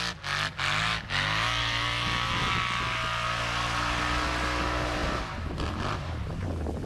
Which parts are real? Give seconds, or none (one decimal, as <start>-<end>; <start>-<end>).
0.0-6.9